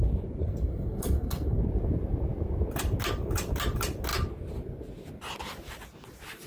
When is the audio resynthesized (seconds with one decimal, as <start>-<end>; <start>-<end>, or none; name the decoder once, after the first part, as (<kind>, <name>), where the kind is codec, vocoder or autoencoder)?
0.4-1.6 (codec, SNAC)